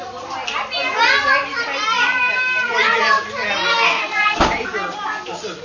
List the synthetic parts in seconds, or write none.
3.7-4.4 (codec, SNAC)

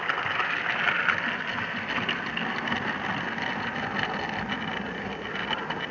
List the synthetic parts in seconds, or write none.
none

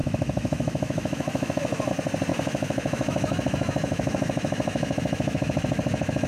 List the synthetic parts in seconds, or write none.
0.0-1.9 (autoencoder, DAC-VAE); 2.3-6.3